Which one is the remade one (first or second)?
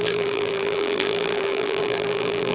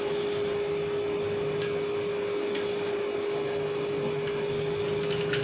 first